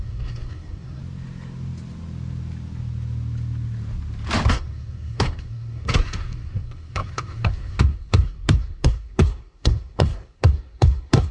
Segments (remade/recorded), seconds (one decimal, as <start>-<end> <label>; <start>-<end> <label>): 0.0-1.0 remade; 1.0-4.5 recorded; 4.5-11.3 remade